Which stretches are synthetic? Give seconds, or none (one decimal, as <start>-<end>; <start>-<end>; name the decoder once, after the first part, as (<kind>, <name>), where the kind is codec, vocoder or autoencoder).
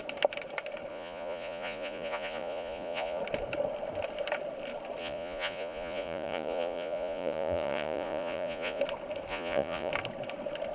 0.9-3.2 (vocoder, Vocos); 5.0-8.8; 9.3-9.9